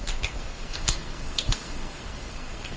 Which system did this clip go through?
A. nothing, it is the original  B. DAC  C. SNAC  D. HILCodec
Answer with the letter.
C